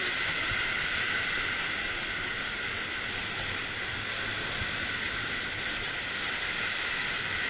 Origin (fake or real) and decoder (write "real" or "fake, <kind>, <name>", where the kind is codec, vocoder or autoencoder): real